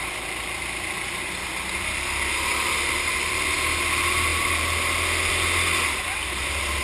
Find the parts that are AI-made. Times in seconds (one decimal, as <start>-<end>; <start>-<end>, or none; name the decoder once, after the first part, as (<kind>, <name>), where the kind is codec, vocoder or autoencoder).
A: none

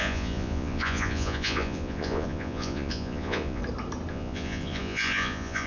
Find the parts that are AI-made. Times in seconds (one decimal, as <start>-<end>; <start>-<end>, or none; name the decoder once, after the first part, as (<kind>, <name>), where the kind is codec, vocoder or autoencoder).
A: 0.0-3.6 (vocoder, Vocos); 4.1-5.7

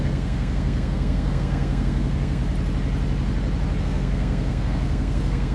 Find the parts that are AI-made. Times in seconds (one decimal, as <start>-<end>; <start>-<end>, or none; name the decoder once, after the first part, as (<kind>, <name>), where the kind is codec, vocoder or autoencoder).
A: 0.0-2.4 (codec, SNAC); 3.8-5.5

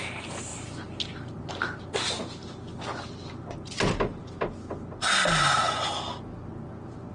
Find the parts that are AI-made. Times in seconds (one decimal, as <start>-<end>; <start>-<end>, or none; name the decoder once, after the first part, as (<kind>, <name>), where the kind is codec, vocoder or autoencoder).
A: none

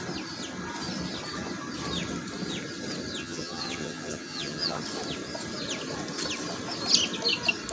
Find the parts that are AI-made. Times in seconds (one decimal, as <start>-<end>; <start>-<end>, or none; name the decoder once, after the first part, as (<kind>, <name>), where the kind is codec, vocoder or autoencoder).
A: 3.2-4.8 (vocoder, HiFi-GAN)

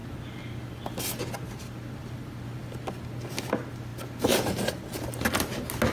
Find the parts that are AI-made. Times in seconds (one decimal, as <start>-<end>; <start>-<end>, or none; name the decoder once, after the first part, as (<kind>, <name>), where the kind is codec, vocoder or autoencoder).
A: none